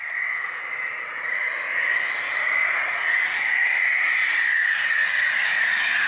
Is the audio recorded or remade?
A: recorded